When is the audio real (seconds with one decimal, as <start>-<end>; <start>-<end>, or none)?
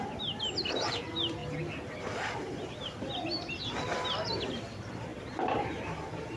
0.0-1.4; 3.7-5.1; 5.7-6.4